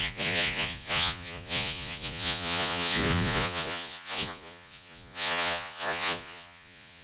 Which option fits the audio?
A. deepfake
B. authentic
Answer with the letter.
A